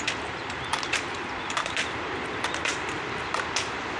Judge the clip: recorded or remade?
remade